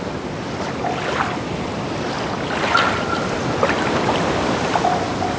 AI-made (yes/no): no